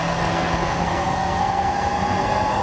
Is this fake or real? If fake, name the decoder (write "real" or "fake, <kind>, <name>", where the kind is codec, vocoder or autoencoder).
fake, codec, SNAC